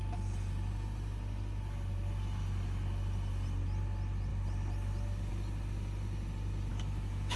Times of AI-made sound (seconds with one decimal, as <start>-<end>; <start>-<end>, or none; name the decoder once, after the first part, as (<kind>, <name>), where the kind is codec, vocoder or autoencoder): 6.7-7.4 (autoencoder, DAC-VAE)